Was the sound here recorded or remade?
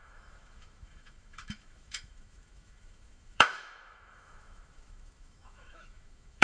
remade